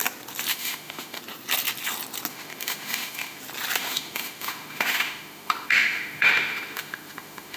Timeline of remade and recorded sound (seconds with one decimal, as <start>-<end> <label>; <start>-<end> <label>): 0.0-0.5 recorded; 0.5-1.2 remade; 1.2-2.3 recorded; 2.3-3.4 remade; 3.4-3.8 recorded; 3.8-7.6 remade